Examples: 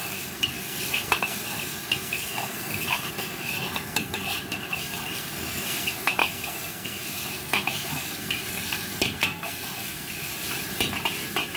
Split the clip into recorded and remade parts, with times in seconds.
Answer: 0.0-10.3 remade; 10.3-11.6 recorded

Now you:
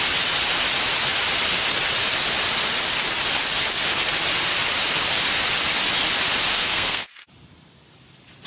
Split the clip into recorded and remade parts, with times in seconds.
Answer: 0.0-6.5 recorded; 6.5-7.1 remade; 7.1-8.5 recorded

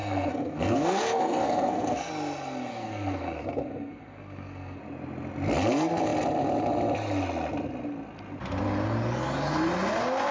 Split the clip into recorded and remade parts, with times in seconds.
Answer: 0.0-2.1 remade; 2.1-2.7 recorded; 2.7-4.8 remade; 4.8-10.3 recorded

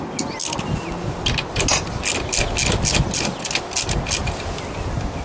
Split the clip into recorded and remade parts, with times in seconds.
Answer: 0.0-5.2 recorded